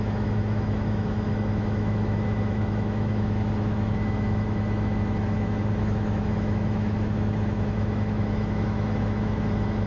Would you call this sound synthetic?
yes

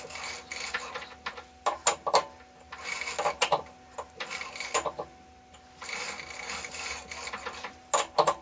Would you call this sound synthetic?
no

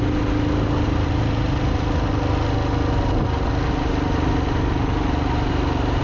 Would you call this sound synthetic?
no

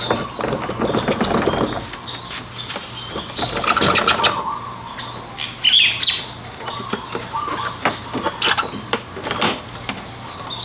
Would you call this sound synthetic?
no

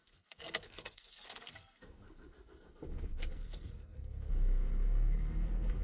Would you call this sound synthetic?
yes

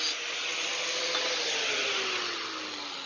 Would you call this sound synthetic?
no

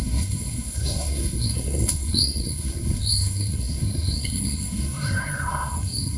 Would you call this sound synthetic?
yes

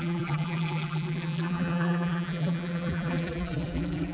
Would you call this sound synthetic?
yes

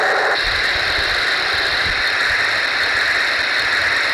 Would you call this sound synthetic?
no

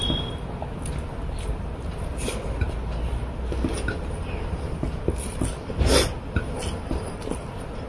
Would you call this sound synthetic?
no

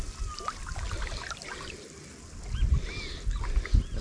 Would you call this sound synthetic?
no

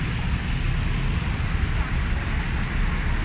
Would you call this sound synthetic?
no